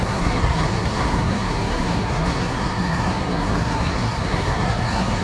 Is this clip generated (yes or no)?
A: yes